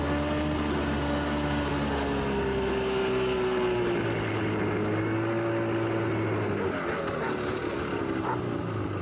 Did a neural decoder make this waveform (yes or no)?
no